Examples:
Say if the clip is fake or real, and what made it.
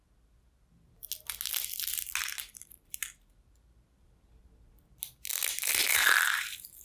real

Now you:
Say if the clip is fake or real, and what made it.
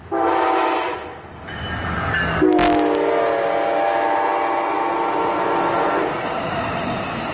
real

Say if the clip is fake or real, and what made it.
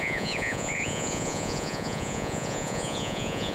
fake, vocoder, Vocos